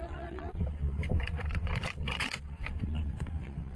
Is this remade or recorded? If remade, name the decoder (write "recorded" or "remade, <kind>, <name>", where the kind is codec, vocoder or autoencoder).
remade, vocoder, WaveNeXt